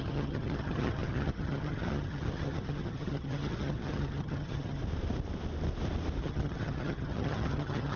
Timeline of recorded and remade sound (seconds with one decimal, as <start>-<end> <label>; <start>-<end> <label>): 0.0-4.8 remade; 4.8-6.2 recorded; 6.2-8.0 remade